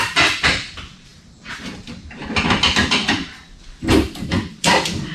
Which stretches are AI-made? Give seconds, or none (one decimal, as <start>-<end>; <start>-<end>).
0.0-1.1; 4.2-5.1